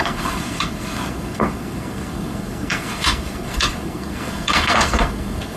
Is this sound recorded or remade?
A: remade